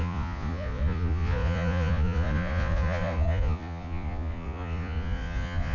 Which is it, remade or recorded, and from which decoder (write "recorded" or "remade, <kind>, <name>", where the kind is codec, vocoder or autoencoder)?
remade, vocoder, Vocos